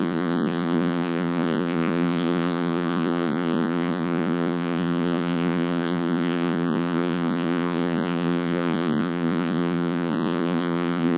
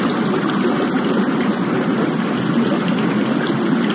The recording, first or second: second